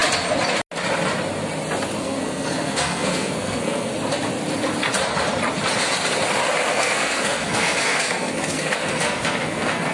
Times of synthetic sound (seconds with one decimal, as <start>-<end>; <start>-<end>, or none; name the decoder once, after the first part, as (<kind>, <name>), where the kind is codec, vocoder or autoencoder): 2.0-3.9 (codec, SNAC); 6.7-9.9